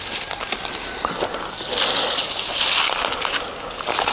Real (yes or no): yes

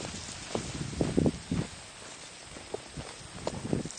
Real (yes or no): yes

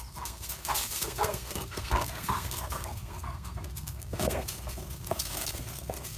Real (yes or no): no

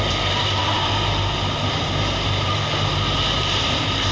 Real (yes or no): yes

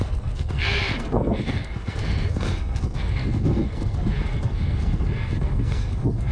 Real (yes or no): no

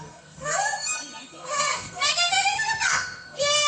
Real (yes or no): no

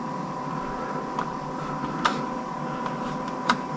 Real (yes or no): yes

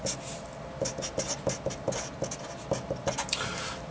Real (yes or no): yes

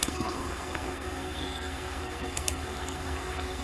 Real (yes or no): no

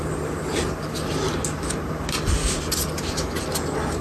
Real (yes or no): yes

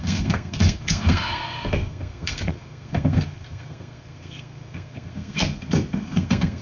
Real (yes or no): no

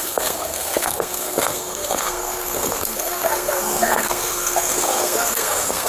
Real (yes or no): no